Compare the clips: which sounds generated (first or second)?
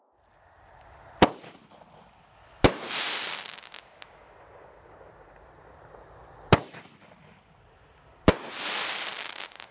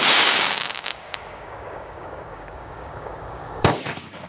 second